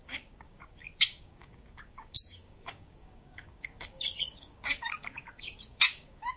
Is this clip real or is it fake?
fake